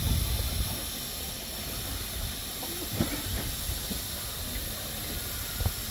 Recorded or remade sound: recorded